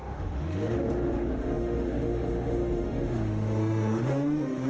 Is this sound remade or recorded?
remade